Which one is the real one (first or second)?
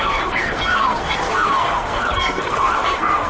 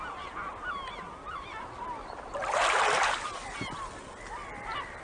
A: second